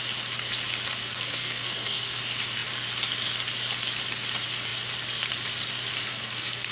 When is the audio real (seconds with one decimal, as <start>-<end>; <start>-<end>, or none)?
0.0-1.0; 2.2-6.1